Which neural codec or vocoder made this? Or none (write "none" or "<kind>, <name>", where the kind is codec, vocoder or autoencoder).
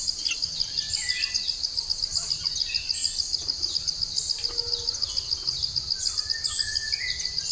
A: none